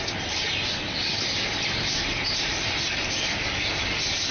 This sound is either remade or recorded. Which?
remade